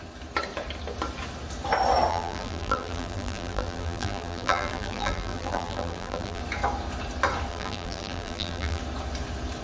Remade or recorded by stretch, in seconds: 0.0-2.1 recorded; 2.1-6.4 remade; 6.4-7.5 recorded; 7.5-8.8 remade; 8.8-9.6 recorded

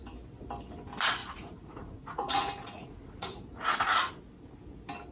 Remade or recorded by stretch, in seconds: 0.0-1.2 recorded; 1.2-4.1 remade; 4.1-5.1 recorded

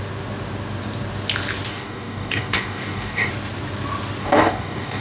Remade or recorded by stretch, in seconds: 0.0-1.7 recorded; 1.7-3.3 remade; 3.3-4.2 recorded; 4.2-5.0 remade

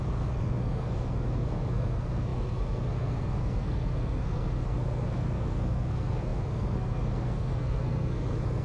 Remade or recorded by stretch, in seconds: 0.0-8.6 remade

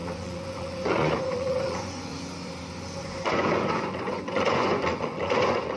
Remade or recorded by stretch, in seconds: 0.0-2.1 remade; 2.1-3.0 recorded; 3.0-5.8 remade